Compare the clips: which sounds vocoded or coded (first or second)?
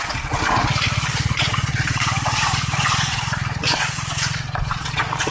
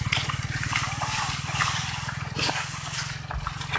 first